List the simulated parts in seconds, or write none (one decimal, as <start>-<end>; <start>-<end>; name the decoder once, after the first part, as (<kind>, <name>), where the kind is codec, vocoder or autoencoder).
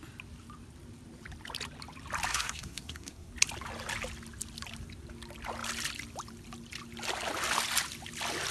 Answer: 2.3-3.3 (codec, SNAC)